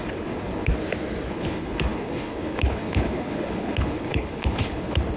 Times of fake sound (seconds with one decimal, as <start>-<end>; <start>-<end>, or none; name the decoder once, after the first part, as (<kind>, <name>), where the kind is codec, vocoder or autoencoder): 0.0-0.7 (codec, HILCodec); 1.3-5.2